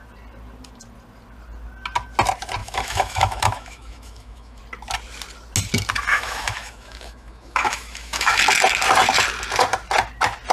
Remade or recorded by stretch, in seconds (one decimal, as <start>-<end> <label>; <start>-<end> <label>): 0.0-2.6 recorded; 2.6-4.6 remade; 4.6-6.1 recorded; 6.1-8.4 remade; 8.4-10.5 recorded